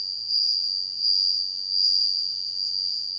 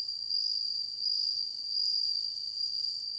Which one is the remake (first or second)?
first